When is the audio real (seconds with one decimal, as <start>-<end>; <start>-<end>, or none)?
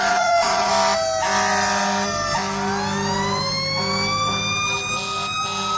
0.7-5.8